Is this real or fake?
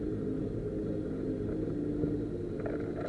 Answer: real